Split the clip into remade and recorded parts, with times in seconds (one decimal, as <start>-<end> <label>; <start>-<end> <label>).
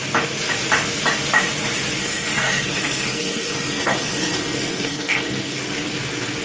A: 0.0-2.0 recorded; 2.0-5.6 remade; 5.6-6.4 recorded